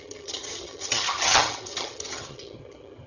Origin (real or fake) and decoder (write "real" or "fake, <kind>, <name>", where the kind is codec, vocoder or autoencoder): fake, vocoder, HiFi-GAN